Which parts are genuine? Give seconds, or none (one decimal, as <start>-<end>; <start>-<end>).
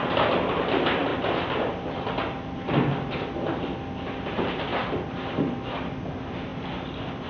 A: 0.0-7.3